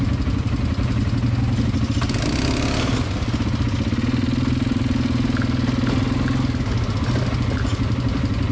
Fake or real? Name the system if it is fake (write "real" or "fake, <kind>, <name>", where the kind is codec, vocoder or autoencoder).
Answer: real